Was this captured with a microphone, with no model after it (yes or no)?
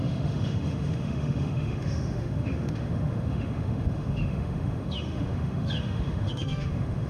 no